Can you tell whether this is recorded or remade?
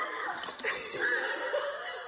recorded